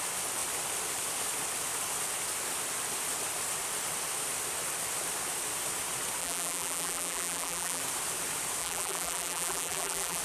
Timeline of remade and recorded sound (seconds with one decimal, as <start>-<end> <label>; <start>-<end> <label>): 0.0-6.2 recorded; 6.2-7.8 remade; 7.8-8.6 recorded; 8.6-10.2 remade